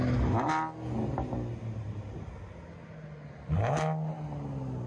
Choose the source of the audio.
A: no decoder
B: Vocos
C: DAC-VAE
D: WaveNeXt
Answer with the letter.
A